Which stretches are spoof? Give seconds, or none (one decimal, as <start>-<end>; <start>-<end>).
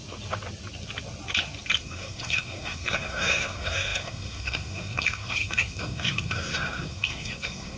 1.8-7.8